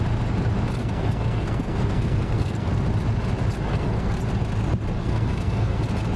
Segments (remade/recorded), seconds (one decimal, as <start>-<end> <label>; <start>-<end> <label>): 0.0-0.8 recorded; 0.8-2.7 remade; 2.7-3.7 recorded; 3.7-4.2 remade; 4.2-5.0 recorded; 5.0-5.8 remade; 5.8-6.2 recorded